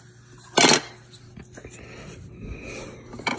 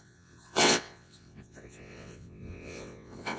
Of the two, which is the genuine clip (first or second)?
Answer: first